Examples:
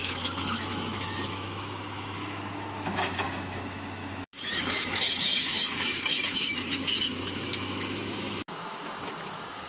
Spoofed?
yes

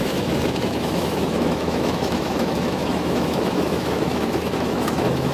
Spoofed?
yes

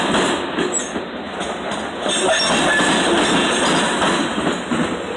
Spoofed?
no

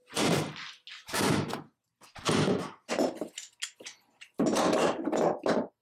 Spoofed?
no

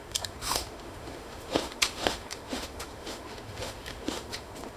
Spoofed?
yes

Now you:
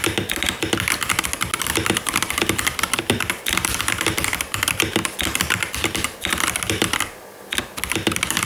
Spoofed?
no